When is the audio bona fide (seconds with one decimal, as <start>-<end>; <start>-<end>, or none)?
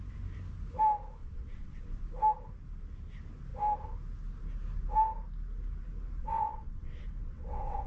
0.0-1.2; 1.8-6.2